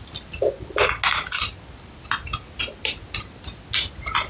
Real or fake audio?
real